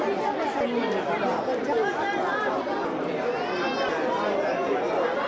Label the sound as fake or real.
real